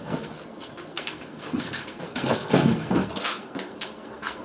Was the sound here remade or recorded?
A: remade